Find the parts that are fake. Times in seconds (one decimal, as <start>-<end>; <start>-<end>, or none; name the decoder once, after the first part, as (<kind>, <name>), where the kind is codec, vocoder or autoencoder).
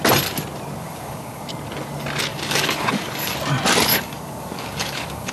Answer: 0.8-1.5 (codec, DAC); 2.3-3.3; 3.9-5.3